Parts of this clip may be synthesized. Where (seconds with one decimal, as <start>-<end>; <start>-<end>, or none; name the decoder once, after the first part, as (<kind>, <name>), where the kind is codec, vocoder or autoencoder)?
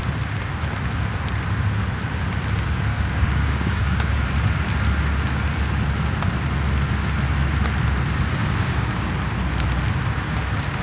2.9-4.2 (codec, DAC); 8.4-9.1